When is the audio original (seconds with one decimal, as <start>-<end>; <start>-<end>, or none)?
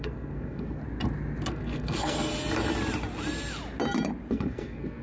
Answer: 0.8-1.5; 2.3-4.3